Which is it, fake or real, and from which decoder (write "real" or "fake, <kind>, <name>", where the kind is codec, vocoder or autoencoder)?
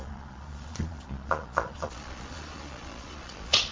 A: fake, vocoder, Vocos